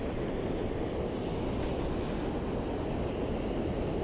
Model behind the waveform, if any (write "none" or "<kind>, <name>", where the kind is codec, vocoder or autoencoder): none